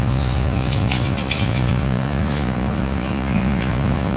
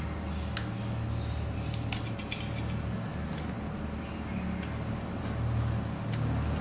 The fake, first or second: first